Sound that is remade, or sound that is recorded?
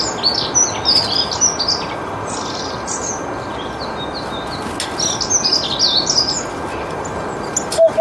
recorded